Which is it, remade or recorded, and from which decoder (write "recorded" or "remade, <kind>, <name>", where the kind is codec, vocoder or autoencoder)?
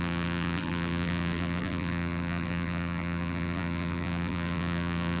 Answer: remade, vocoder, BigVGAN v2